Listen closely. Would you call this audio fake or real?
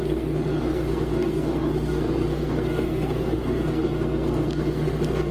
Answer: fake